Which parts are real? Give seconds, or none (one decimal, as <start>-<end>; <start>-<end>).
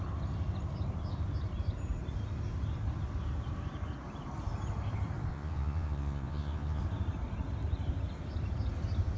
0.0-5.3; 6.8-9.2